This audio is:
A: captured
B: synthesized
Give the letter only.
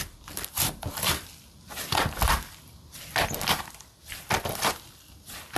B